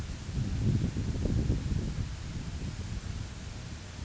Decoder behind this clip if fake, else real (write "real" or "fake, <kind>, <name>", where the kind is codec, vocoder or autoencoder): real